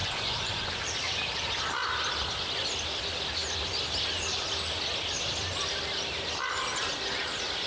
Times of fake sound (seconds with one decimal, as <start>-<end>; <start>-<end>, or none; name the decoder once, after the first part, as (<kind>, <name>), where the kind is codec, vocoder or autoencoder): 0.0-0.8 (vocoder, Vocos)